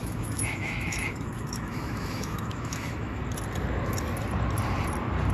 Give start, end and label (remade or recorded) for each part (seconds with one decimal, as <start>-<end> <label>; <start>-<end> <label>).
0.0-3.2 remade; 3.2-5.3 recorded